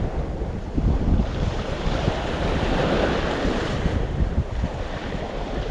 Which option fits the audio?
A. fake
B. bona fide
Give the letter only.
B